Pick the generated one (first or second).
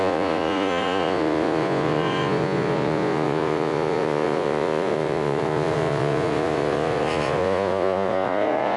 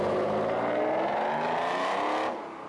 first